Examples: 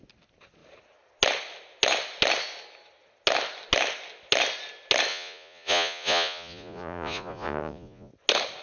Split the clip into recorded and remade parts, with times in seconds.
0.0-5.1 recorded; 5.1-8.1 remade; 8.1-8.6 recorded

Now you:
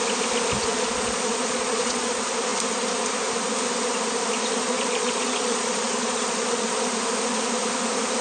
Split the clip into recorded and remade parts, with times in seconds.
0.0-0.7 recorded; 0.7-2.1 remade; 2.1-4.6 recorded; 4.6-6.8 remade; 6.8-8.2 recorded

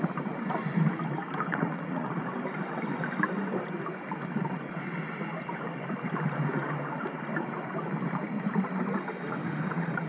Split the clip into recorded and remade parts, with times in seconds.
0.0-1.5 recorded; 1.5-2.2 remade; 2.2-9.4 recorded; 9.4-10.1 remade

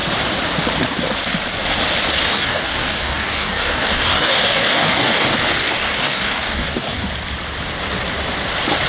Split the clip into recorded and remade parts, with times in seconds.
0.0-2.3 recorded; 2.3-7.1 remade; 7.1-8.9 recorded